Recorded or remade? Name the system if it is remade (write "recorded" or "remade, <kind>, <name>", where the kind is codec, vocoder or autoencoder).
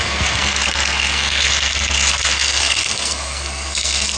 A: remade, codec, SNAC